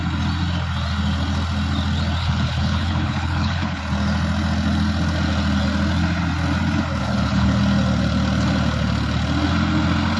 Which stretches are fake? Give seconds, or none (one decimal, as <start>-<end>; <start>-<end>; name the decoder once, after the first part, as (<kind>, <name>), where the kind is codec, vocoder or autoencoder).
2.2-3.8 (codec, HILCodec); 7.0-7.6